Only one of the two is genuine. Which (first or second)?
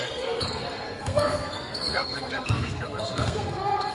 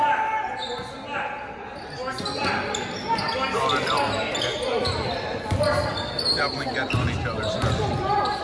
second